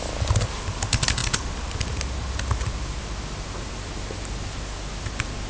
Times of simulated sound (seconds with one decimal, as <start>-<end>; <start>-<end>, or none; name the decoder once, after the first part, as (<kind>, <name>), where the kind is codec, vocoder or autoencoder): none